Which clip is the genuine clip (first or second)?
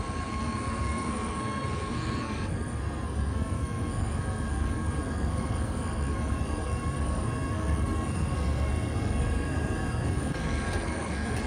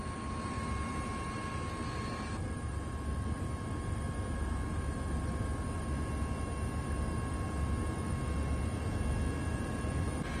second